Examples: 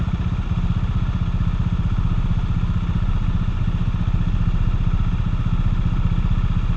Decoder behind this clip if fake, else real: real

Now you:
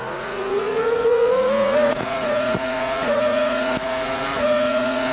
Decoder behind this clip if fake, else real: fake, vocoder, Vocos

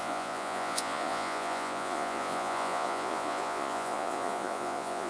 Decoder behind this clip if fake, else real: fake, vocoder, Vocos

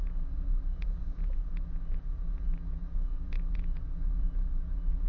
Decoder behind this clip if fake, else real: fake, vocoder, Vocos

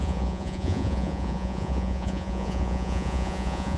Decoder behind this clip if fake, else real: fake, vocoder, Vocos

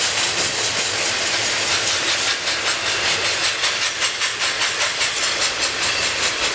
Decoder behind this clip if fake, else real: real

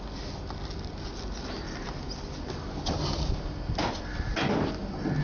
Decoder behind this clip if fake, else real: real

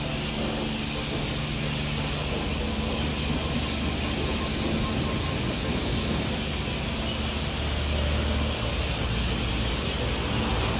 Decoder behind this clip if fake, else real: real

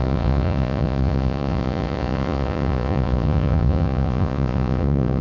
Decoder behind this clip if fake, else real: fake, vocoder, Vocos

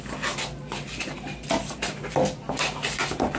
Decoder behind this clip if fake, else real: real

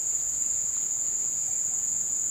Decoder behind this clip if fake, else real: fake, vocoder, Vocos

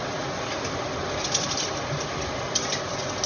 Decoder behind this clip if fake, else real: real